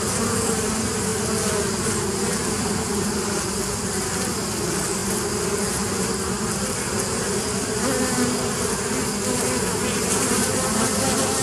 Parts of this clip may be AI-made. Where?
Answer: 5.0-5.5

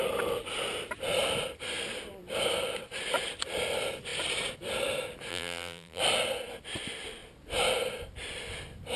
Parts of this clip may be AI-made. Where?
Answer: 5.3-6.0

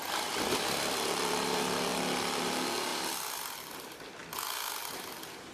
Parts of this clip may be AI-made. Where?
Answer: 0.0-1.9; 2.4-2.9; 3.6-4.2; 4.8-5.5

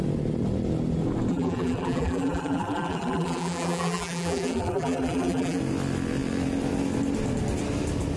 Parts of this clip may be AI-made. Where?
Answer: 1.3-5.6

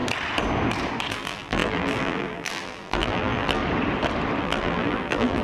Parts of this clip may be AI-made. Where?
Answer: 1.1-3.6; 4.4-5.4

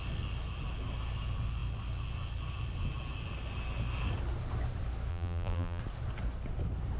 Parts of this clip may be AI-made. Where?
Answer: 5.1-5.8

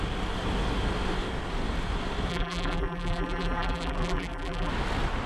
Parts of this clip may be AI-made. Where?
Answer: 2.3-4.7